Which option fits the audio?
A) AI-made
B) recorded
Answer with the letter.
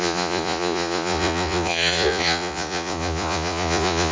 A